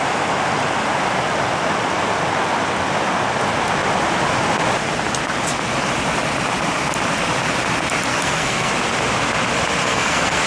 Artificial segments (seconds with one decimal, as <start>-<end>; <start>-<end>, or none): 8.1-8.7; 9.8-10.5